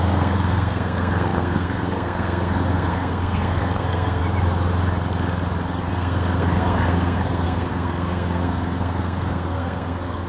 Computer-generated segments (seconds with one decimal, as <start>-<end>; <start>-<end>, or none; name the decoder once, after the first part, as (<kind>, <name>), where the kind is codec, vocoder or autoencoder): 0.0-4.2 (codec, SNAC); 5.9-10.3